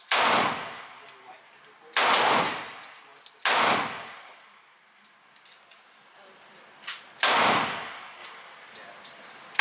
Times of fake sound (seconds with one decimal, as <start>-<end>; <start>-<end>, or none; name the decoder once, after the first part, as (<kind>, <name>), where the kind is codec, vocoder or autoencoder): none